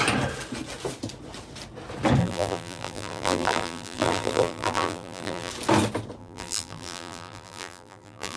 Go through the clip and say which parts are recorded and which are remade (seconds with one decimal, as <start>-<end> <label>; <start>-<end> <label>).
0.0-2.2 recorded; 2.2-5.5 remade; 5.5-6.2 recorded; 6.2-8.4 remade